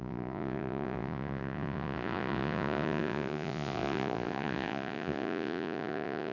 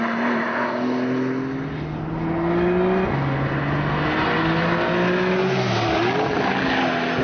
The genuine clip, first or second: second